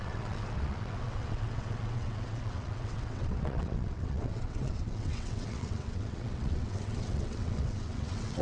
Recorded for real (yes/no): no